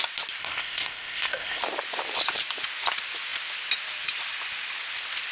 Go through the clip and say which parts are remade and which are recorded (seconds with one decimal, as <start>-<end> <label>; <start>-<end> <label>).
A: 0.0-0.4 recorded; 0.4-1.6 remade; 1.6-5.3 recorded